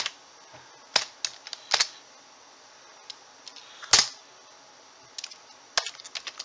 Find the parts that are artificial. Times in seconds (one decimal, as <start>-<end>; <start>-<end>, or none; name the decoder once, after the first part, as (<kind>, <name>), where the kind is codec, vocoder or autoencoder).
none